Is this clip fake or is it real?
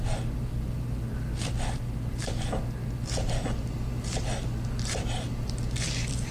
real